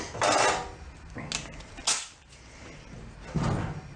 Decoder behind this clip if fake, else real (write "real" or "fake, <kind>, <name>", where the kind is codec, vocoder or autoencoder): real